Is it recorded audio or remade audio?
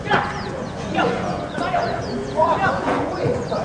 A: remade